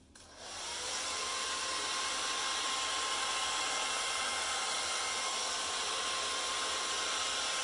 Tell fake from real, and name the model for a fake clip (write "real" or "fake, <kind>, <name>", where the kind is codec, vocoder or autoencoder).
real